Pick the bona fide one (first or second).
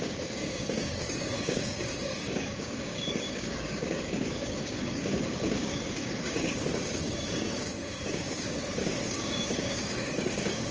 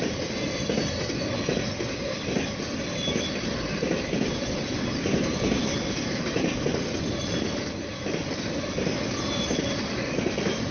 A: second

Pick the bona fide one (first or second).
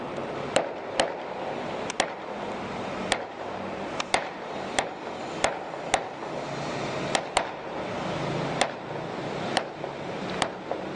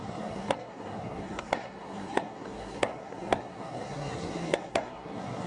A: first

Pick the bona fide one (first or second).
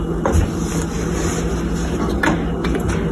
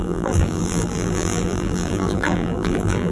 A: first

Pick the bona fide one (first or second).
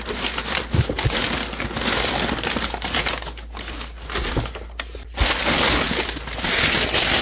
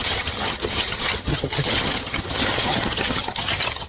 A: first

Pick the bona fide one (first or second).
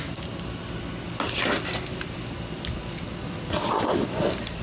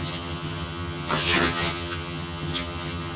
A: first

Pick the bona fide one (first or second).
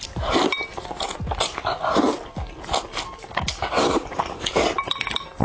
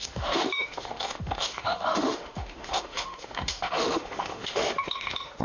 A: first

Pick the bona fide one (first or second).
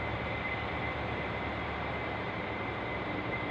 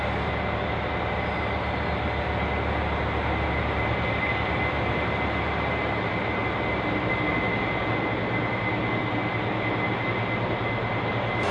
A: second